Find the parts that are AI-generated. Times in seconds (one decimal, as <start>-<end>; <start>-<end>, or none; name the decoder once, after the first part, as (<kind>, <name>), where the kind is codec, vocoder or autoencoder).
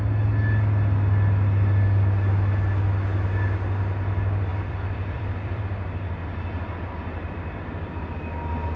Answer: 4.5-5.6 (vocoder, BigVGAN v2)